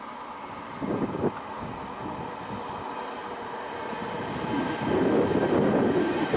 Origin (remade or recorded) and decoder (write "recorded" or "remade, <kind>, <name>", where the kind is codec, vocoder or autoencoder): recorded